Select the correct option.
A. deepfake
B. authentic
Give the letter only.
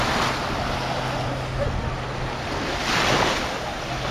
B